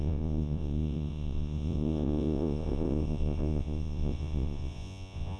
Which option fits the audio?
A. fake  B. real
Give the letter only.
A